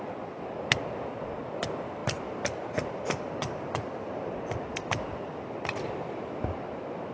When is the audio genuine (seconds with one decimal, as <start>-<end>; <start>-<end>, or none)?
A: 0.0-7.1

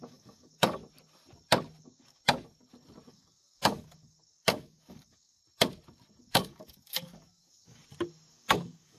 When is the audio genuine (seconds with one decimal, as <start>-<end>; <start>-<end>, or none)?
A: 0.8-1.8; 2.2-3.1; 5.4-6.2; 7.8-8.3

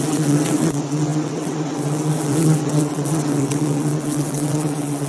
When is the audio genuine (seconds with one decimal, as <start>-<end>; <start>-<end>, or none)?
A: none

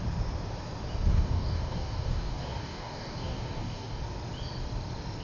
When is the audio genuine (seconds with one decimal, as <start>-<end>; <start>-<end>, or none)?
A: 0.0-1.1; 4.0-5.2